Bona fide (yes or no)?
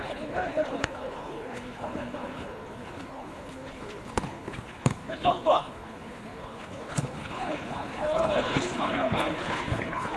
no